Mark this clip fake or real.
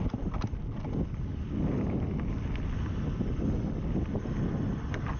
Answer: real